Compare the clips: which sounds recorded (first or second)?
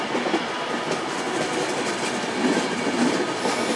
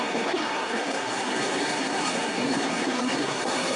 first